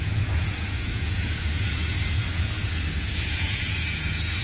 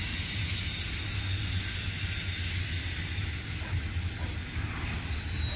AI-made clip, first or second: first